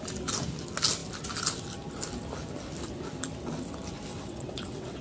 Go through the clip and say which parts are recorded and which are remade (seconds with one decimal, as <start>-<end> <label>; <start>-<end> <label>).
0.0-4.1 recorded; 4.1-5.0 remade